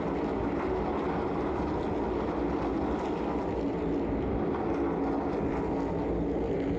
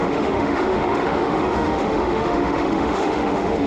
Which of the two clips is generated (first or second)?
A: second